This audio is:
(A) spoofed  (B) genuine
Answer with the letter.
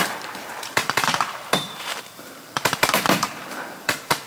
A